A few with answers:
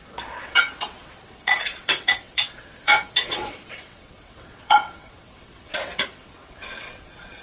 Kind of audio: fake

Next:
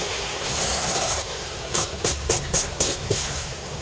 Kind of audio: fake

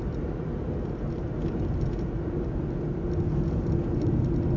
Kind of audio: real